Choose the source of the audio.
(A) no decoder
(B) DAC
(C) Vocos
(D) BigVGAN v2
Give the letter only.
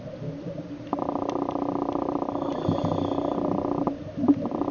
A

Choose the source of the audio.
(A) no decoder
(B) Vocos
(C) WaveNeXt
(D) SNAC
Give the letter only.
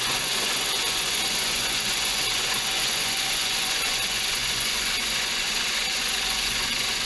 B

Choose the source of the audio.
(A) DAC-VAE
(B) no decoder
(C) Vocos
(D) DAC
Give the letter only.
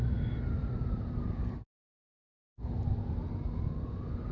B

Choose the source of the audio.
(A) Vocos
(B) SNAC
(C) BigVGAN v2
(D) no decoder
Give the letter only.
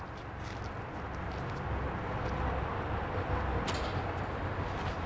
D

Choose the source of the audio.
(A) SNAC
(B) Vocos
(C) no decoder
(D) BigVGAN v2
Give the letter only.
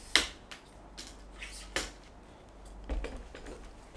C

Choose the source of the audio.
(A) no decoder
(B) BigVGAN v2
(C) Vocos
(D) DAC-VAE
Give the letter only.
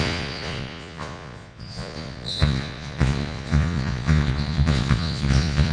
C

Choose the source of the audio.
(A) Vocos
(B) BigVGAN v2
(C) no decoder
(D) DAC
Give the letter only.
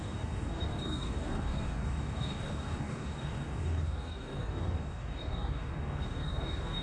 D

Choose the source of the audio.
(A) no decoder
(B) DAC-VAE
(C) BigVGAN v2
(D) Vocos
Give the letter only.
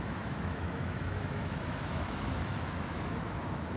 B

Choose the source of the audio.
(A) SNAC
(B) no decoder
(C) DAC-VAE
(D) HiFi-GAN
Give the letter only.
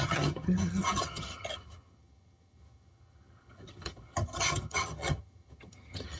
D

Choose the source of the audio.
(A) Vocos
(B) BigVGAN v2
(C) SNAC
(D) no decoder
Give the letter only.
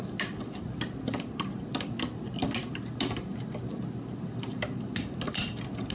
D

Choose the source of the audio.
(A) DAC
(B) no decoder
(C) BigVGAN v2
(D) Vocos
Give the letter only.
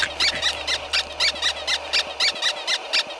B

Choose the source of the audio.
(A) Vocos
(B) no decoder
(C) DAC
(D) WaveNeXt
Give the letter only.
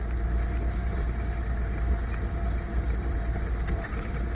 B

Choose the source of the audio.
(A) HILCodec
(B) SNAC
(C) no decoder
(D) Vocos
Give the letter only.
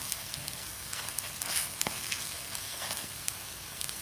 B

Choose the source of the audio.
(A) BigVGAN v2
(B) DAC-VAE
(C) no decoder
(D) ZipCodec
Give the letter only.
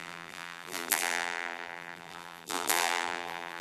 A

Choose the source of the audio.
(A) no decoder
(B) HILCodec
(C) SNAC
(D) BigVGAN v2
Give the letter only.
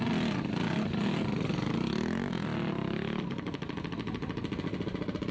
A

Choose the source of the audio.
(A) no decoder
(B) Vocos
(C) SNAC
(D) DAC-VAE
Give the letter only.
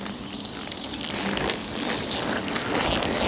A